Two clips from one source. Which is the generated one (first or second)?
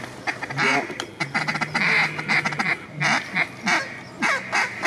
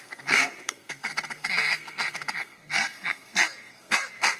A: second